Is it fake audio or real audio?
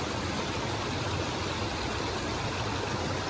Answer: real